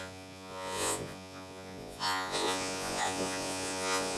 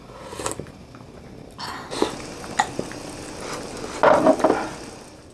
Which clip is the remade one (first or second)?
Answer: first